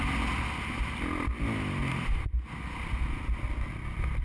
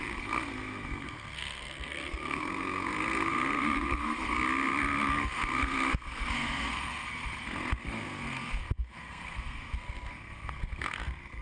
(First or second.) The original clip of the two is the first